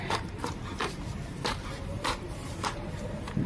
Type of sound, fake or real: fake